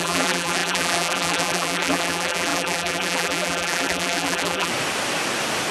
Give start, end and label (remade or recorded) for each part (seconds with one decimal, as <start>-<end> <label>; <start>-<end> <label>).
0.0-4.7 remade; 4.7-5.7 recorded